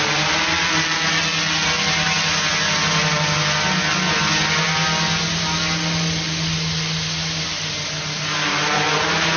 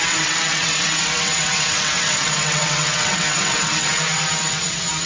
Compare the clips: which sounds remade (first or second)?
second